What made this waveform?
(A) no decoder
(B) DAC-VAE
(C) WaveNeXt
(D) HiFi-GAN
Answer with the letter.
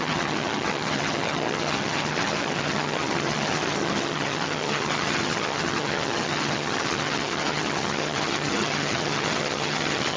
D